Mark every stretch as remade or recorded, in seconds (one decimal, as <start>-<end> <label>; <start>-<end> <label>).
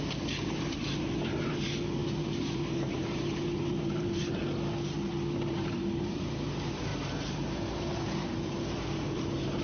0.0-0.8 remade; 0.8-1.4 recorded; 1.4-4.4 remade; 4.4-5.5 recorded; 5.5-9.6 remade